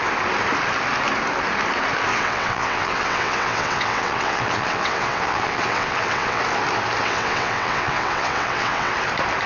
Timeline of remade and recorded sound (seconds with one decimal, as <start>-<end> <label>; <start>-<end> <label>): 0.0-2.1 recorded; 2.1-6.4 remade; 6.4-7.0 recorded; 7.0-8.9 remade; 8.9-9.5 recorded